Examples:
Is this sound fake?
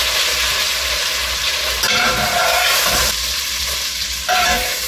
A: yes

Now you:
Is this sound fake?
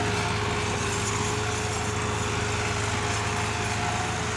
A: no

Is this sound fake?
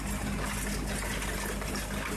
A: no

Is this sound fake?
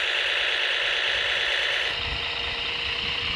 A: no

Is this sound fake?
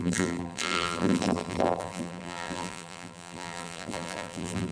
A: yes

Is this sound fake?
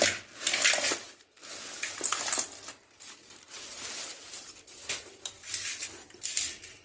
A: no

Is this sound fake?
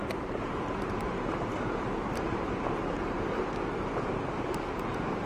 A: yes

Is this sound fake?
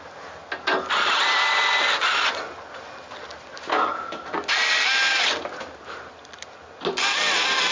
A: no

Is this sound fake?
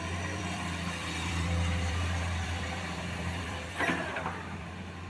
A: yes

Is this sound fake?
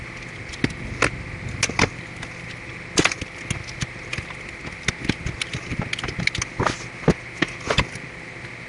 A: no